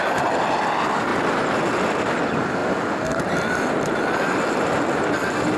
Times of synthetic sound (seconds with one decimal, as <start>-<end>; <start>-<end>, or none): 1.1-1.6